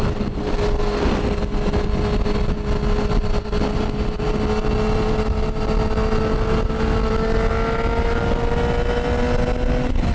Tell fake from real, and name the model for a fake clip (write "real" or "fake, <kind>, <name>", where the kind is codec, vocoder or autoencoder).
real